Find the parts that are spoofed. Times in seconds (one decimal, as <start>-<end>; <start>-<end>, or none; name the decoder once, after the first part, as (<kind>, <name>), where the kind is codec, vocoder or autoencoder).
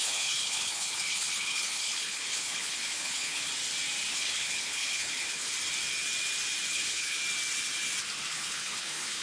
0.0-3.5 (codec, HILCodec); 4.1-5.5; 6.7-7.2; 8.3-9.2